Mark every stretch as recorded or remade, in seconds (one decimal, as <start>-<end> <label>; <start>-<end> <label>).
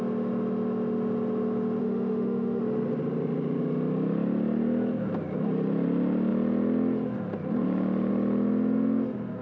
0.0-1.8 recorded; 1.8-2.6 remade; 2.6-9.4 recorded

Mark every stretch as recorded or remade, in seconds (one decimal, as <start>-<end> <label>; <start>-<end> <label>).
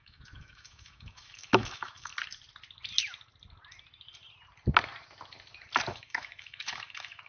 0.0-2.1 remade; 2.1-5.9 recorded; 5.9-7.3 remade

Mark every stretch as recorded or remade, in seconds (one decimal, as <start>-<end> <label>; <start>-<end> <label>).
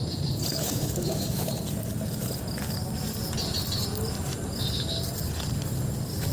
0.0-0.5 recorded; 0.5-1.5 remade; 1.5-6.3 recorded